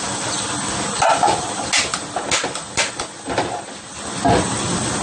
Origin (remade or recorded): recorded